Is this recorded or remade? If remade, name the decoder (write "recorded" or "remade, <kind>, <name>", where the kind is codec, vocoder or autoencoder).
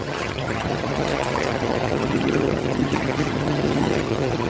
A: remade, vocoder, HiFi-GAN